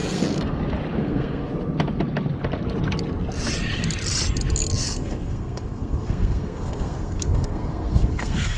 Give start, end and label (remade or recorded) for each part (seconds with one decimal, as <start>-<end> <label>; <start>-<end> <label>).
0.0-0.6 remade; 0.6-1.0 recorded; 1.0-1.5 remade; 1.5-4.8 recorded; 4.8-8.6 remade